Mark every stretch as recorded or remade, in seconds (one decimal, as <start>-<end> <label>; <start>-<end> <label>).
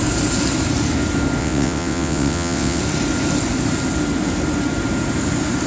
0.0-1.4 recorded; 1.4-2.8 remade; 2.8-5.7 recorded